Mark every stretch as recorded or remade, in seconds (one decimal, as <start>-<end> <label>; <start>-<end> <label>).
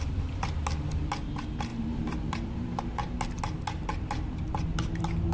0.0-1.7 recorded; 1.7-2.8 remade; 2.8-5.3 recorded